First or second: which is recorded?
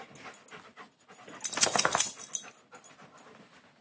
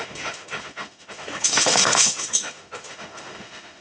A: first